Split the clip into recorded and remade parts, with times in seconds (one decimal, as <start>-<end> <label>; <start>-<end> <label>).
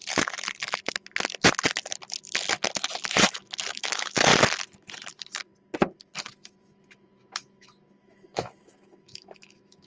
0.0-3.3 recorded; 3.3-4.3 remade; 4.3-6.2 recorded; 6.2-9.9 remade